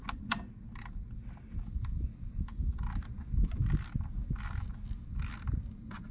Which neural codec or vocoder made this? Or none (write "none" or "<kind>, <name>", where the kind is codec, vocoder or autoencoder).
none